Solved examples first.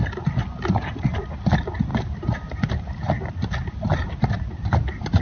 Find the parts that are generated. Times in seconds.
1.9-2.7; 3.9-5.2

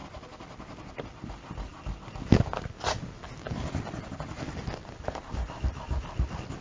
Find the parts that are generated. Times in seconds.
none

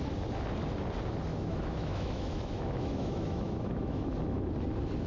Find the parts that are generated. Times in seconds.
1.3-4.4

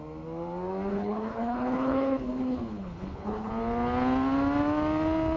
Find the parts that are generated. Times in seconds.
0.9-3.5

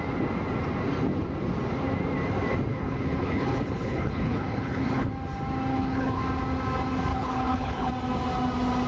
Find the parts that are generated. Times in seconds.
2.7-5.1; 5.7-6.2; 7.1-7.9

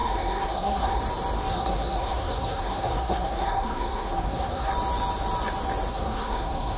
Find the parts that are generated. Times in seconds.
0.0-1.0; 1.5-4.7; 5.9-6.8

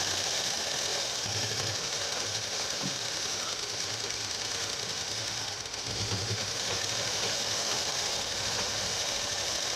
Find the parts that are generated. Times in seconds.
0.0-9.8